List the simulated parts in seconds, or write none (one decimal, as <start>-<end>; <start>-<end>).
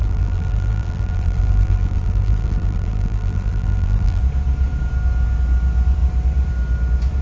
0.0-4.2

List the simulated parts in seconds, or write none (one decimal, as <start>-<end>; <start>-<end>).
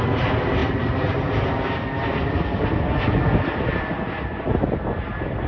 none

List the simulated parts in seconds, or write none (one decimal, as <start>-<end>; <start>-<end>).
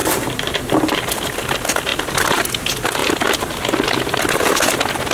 0.0-1.0; 3.0-3.5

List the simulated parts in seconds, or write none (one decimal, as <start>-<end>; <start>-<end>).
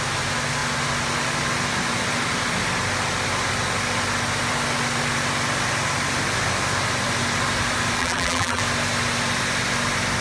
8.0-8.6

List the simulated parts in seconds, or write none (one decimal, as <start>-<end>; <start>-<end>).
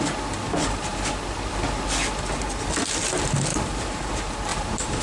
3.5-4.1; 4.5-5.0